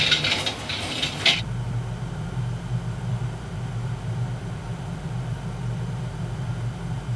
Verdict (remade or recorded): remade